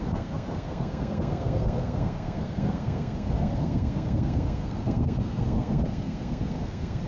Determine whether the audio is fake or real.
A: fake